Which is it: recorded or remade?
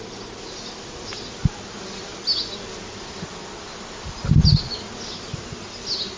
recorded